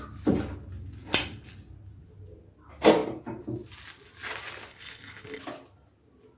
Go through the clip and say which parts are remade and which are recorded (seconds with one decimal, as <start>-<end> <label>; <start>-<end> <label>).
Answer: 0.0-4.7 recorded; 4.7-5.4 remade; 5.4-6.4 recorded